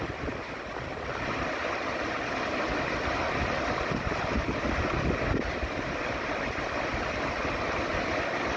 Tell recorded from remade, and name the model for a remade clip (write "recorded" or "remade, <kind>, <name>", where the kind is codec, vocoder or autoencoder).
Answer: recorded